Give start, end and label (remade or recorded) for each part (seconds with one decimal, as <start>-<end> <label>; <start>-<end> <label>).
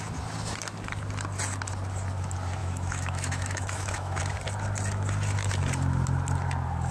0.0-2.6 recorded; 2.6-4.2 remade; 4.2-6.9 recorded